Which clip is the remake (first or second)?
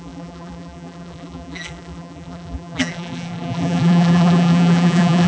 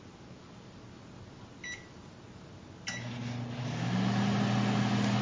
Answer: first